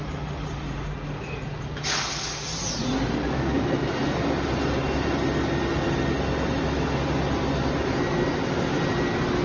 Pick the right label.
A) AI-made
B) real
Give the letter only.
B